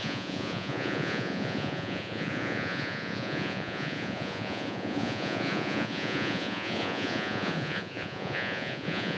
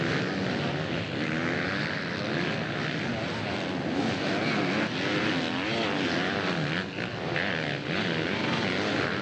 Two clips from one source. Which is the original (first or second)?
second